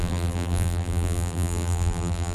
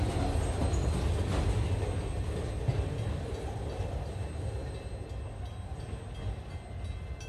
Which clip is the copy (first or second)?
first